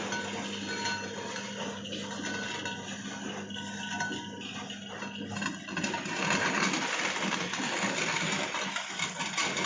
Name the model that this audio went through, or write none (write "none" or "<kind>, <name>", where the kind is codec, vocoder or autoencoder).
none